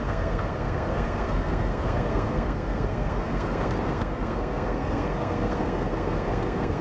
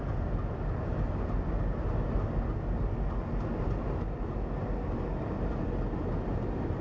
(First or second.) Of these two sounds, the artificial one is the first